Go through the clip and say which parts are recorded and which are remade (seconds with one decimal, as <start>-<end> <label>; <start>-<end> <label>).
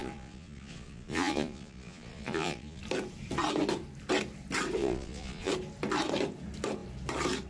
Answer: 0.0-2.8 remade; 2.8-4.8 recorded; 4.8-5.5 remade; 5.5-7.5 recorded